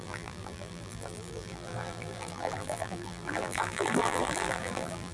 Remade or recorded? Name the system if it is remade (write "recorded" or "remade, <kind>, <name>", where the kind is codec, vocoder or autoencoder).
remade, vocoder, BigVGAN v2